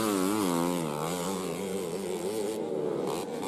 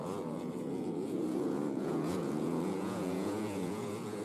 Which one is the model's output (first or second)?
second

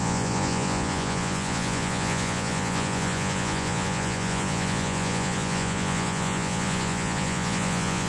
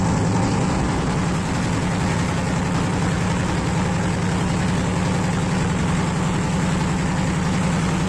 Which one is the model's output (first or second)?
first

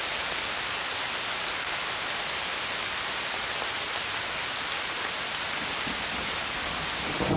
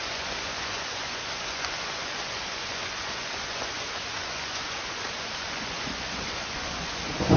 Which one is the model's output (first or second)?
second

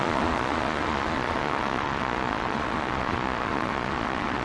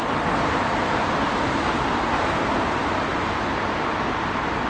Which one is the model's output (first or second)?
first